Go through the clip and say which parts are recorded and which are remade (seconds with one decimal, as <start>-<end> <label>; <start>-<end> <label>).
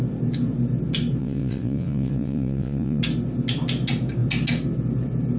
0.0-1.2 recorded; 1.2-3.0 remade; 3.0-5.4 recorded